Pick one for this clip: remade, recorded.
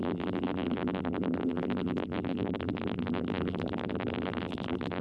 remade